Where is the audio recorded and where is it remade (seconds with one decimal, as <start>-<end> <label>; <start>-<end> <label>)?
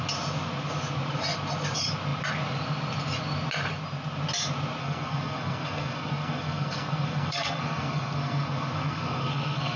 0.0-4.8 recorded; 4.8-9.8 remade